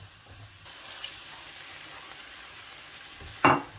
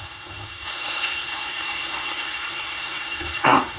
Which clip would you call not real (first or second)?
second